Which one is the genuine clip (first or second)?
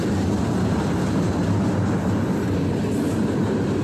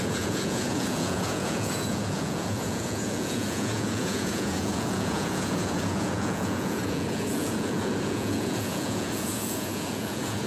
first